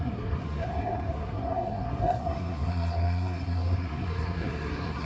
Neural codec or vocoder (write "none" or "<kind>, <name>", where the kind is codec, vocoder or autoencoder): codec, SNAC